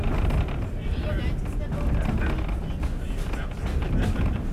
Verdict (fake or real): real